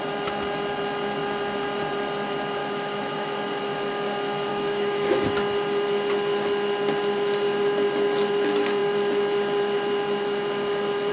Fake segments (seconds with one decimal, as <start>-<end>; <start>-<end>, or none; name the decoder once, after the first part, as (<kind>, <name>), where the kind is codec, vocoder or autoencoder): 2.6-3.6 (autoencoder, DAC-VAE); 4.5-5.2